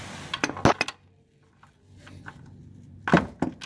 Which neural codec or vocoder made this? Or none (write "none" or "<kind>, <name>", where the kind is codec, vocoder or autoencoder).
none